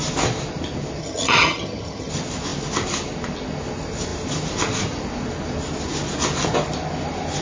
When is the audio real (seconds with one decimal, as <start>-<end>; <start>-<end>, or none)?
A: 0.0-1.0; 2.1-7.4